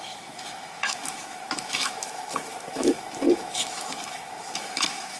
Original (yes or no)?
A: no